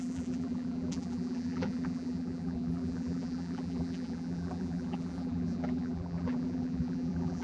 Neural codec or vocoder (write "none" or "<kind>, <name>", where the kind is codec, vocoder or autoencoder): vocoder, BigVGAN v2